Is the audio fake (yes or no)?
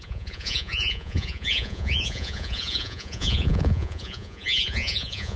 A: yes